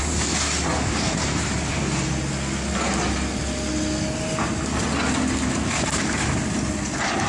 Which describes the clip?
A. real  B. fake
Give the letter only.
A